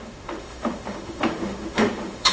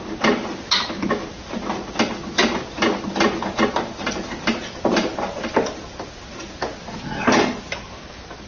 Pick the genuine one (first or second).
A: second